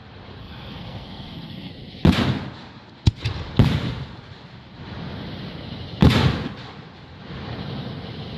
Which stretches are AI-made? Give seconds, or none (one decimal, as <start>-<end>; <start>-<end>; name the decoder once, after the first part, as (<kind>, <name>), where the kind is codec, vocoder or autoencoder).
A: 0.4-1.7 (codec, SNAC)

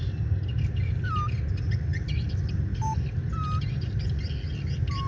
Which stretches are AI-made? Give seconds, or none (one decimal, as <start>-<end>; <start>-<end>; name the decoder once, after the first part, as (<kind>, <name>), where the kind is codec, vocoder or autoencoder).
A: none